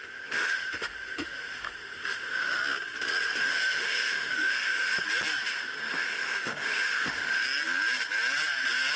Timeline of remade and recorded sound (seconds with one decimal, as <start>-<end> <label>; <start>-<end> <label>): 0.0-2.6 remade; 2.6-3.4 recorded; 3.4-4.9 remade; 4.9-5.5 recorded; 5.5-7.4 remade; 7.4-9.0 recorded